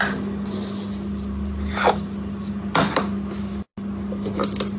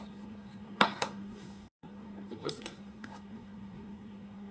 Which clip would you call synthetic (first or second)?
second